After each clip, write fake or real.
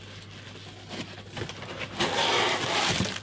real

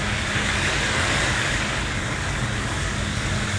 fake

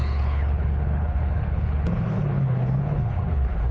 fake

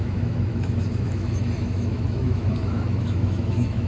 fake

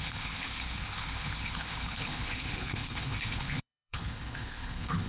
fake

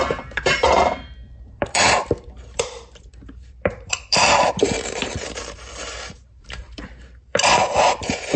fake